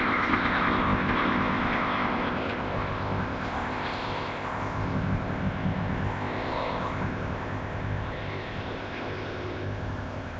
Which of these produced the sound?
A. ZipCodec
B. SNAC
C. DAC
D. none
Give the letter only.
A